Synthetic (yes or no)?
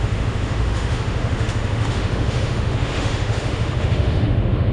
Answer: yes